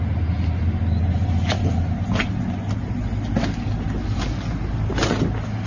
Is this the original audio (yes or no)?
yes